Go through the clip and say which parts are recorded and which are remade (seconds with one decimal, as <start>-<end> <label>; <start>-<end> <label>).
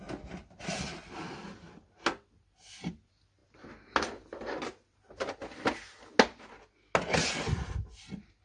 0.0-8.4 recorded